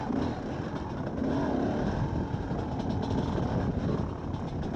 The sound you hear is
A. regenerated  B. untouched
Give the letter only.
B